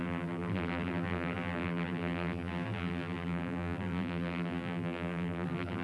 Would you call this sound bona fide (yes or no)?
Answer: no